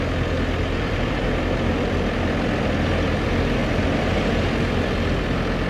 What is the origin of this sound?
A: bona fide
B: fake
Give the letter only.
A